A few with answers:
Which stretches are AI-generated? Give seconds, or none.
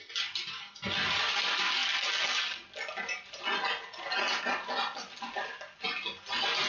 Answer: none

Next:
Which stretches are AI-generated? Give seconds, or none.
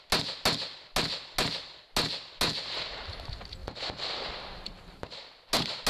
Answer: none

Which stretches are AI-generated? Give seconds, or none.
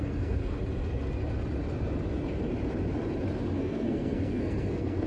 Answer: 0.0-0.5 (codec, SNAC); 3.6-5.1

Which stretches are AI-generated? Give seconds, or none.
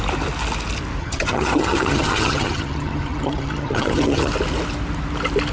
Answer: 1.0-4.3 (vocoder, HiFi-GAN)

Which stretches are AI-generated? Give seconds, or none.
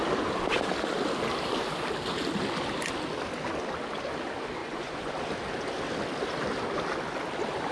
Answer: 4.6-5.1 (vocoder, Vocos)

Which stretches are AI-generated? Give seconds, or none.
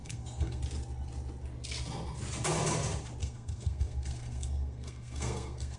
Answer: 0.0-0.6 (codec, SNAC); 3.2-5.8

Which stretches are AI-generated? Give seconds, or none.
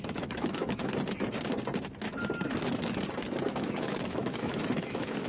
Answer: 0.0-0.8 (autoencoder, DAC-VAE); 3.5-5.3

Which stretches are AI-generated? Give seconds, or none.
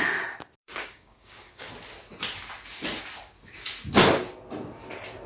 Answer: 0.6-1.7 (codec, DAC)